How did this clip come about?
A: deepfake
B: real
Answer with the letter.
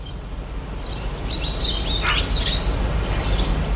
B